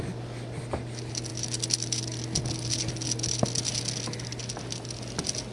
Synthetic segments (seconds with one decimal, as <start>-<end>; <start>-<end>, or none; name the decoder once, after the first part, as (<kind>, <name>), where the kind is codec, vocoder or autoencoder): none